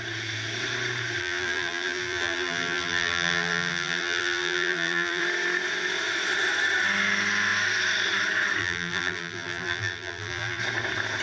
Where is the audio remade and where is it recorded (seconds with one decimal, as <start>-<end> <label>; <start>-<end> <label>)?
0.0-1.2 recorded; 1.2-5.2 remade; 5.2-8.6 recorded; 8.6-10.6 remade; 10.6-11.2 recorded